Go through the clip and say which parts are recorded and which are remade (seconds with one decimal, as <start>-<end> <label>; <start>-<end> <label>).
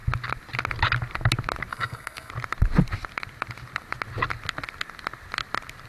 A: 0.0-1.7 recorded; 1.7-2.3 remade; 2.3-5.9 recorded